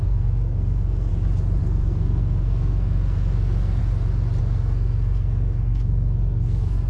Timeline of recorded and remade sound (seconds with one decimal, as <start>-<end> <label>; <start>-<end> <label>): 0.0-1.1 remade; 1.1-1.6 recorded; 1.6-3.8 remade; 3.8-4.4 recorded; 4.4-6.9 remade